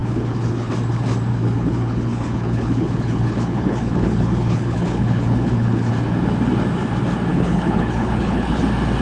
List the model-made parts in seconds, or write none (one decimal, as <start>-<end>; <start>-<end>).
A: 0.0-0.7; 1.3-5.9; 7.3-8.6